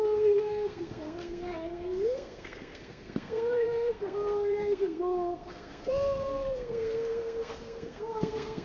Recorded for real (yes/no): no